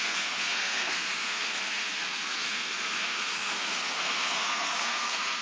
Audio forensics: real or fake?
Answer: fake